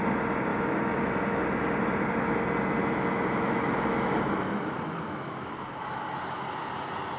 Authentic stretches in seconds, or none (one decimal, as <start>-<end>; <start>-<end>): 0.0-0.5; 1.2-2.8; 6.2-7.2